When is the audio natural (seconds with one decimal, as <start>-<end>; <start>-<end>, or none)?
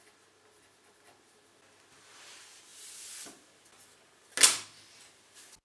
0.0-5.6